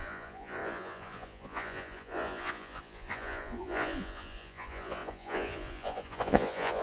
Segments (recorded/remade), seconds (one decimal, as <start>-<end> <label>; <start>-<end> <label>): 0.0-6.8 remade